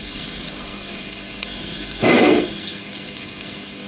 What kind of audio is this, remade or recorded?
remade